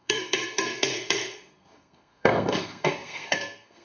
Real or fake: fake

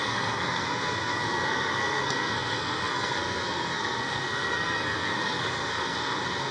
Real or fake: fake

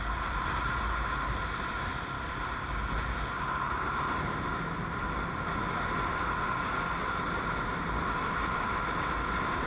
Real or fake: real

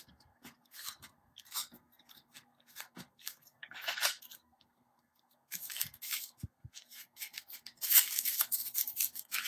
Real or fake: fake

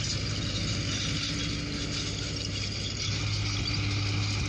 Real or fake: real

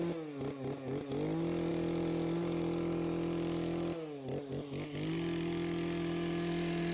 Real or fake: real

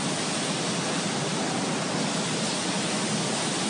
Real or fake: real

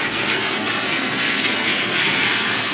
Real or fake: fake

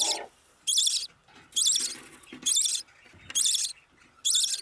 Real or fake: real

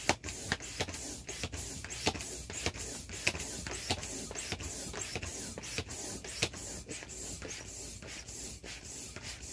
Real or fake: real